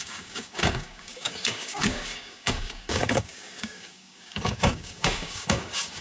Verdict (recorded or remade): remade